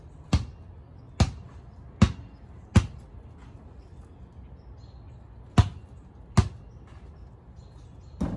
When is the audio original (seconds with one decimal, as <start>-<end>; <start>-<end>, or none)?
0.0-8.4